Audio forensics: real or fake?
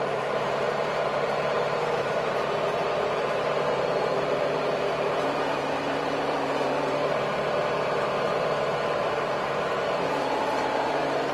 fake